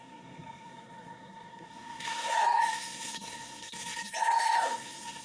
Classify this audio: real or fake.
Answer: fake